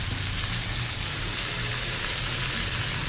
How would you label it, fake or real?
real